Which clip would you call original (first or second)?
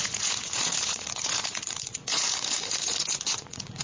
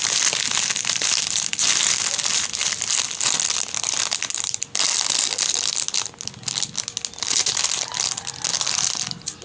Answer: second